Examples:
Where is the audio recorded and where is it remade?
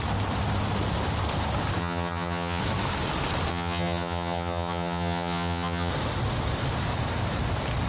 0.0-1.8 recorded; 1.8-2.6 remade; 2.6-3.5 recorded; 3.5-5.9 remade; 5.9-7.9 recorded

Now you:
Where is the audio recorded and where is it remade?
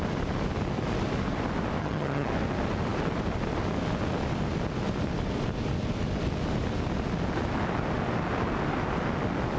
0.0-1.8 recorded; 1.8-2.3 remade; 2.3-9.6 recorded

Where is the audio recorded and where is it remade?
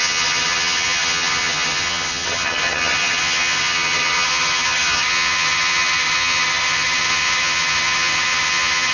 0.0-8.9 remade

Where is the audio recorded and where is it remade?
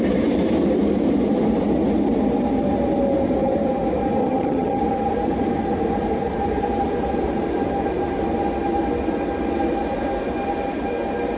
0.0-4.2 recorded; 4.2-4.8 remade; 4.8-11.4 recorded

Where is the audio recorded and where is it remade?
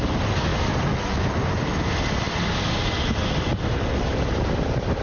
0.0-5.0 recorded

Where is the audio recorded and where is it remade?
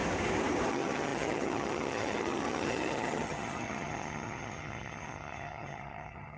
0.0-0.7 recorded; 0.7-6.4 remade